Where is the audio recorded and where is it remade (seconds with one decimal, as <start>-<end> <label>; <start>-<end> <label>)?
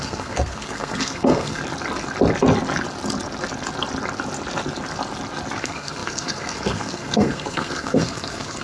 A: 0.0-1.6 remade; 1.6-5.6 recorded; 5.6-8.6 remade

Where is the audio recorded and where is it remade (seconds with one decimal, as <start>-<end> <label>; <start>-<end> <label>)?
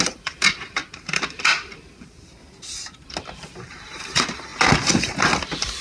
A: 0.0-0.8 remade; 0.8-3.1 recorded; 3.1-4.5 remade; 4.5-5.8 recorded